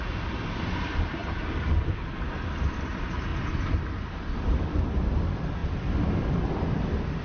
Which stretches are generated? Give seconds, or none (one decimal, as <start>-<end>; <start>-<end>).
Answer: 0.0-3.3; 4.6-7.2